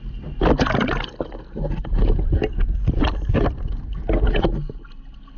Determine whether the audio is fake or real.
real